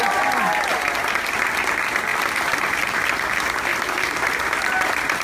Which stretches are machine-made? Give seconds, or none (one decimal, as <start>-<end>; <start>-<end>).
none